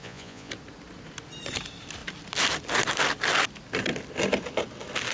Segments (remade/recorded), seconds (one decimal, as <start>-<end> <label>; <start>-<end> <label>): 0.0-0.5 remade; 0.5-5.1 recorded